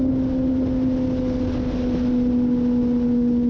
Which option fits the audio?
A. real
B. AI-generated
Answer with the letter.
A